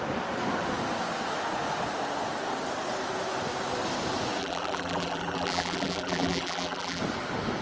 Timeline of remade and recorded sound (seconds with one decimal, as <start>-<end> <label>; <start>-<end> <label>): 0.0-4.4 recorded; 4.4-7.0 remade; 7.0-7.6 recorded